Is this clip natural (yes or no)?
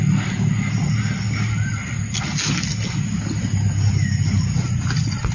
yes